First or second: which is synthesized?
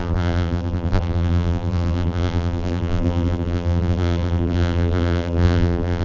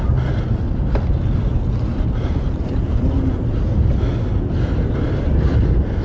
first